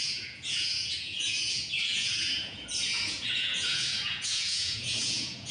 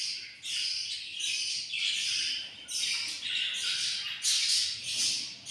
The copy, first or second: first